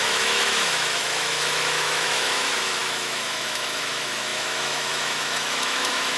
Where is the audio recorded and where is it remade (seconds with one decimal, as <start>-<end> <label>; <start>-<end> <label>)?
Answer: 0.0-6.2 remade